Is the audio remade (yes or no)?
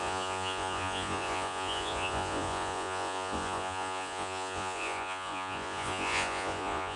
yes